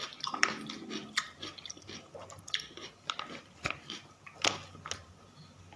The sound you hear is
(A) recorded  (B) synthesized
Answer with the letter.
A